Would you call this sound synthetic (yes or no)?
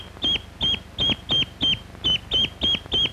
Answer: no